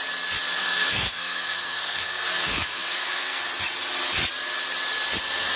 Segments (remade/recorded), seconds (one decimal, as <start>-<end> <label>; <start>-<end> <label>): 0.0-0.6 recorded; 0.6-3.4 remade; 3.4-5.6 recorded